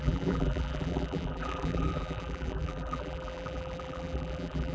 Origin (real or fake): fake